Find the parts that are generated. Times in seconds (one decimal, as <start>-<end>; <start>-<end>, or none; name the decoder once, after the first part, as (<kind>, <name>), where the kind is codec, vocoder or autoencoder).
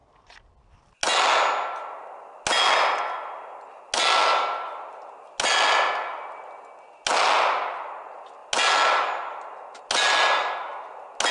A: none